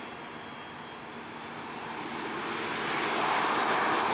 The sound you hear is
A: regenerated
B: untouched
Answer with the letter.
B